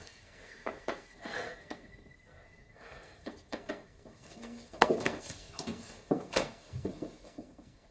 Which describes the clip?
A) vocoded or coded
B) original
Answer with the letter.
A